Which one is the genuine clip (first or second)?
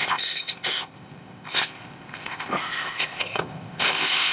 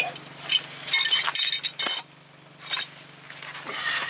second